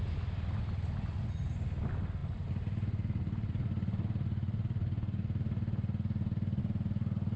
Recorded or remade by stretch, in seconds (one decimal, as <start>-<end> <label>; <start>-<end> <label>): 0.0-7.4 recorded

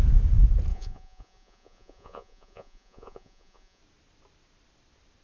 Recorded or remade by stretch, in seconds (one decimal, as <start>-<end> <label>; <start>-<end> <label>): 0.0-0.7 recorded; 0.7-3.8 remade; 3.8-5.2 recorded

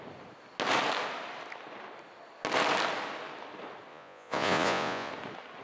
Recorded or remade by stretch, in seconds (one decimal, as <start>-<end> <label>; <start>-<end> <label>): 0.0-3.9 recorded; 3.9-5.1 remade; 5.1-5.6 recorded